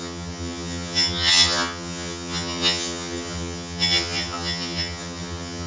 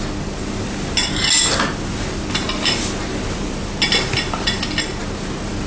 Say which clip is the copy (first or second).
first